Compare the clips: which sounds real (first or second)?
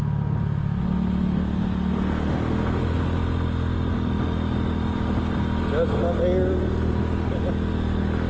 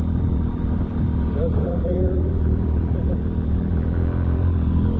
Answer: first